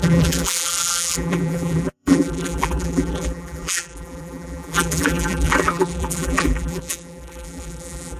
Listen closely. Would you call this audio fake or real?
fake